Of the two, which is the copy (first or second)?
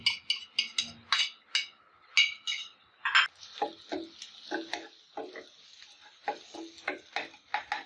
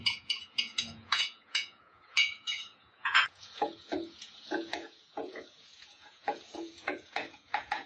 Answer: second